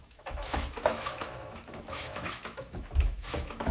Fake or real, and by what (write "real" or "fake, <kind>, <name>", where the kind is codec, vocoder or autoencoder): fake, autoencoder, DAC-VAE